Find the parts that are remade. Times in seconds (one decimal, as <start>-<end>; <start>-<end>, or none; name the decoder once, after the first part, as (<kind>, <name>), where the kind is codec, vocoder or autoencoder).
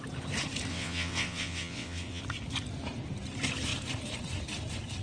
0.7-2.2 (vocoder, WaveNeXt)